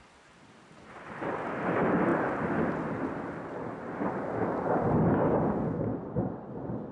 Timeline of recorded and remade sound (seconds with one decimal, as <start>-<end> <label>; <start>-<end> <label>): 0.0-6.9 recorded